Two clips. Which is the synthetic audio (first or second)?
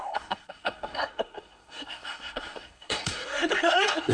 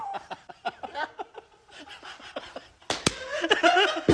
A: first